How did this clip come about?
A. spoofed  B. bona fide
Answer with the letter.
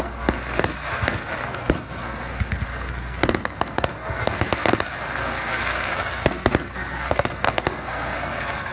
A